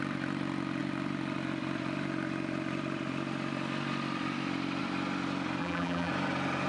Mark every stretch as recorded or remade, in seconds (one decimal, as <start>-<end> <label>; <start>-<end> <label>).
0.0-5.6 recorded; 5.6-6.1 remade; 6.1-6.7 recorded